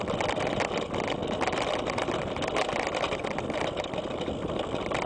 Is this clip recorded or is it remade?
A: recorded